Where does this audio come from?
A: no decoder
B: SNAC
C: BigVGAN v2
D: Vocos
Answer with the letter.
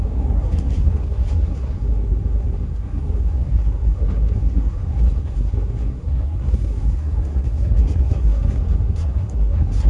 B